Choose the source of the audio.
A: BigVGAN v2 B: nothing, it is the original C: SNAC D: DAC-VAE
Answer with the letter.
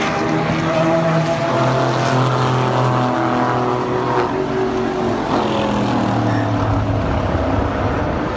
B